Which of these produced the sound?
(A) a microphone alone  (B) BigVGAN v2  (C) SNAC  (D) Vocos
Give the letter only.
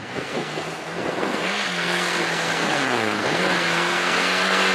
C